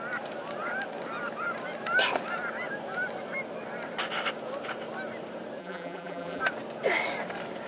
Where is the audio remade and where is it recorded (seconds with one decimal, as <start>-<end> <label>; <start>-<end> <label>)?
0.0-5.6 recorded; 5.6-6.4 remade; 6.4-7.7 recorded